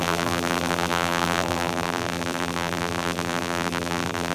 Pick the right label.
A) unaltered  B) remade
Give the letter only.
B